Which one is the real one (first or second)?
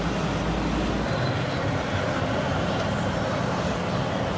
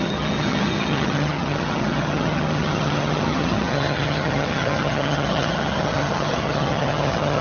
first